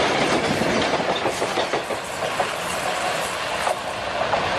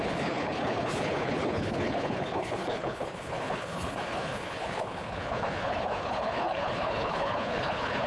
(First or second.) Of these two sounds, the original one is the first